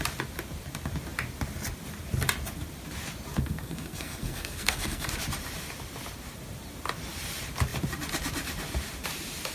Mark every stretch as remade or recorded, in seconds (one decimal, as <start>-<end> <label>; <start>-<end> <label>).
0.0-3.3 recorded; 3.3-5.1 remade; 5.1-9.5 recorded